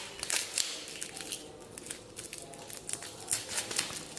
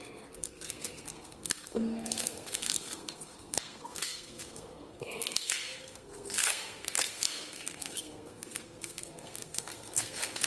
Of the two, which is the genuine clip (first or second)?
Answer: first